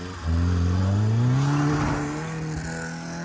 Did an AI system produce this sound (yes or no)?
no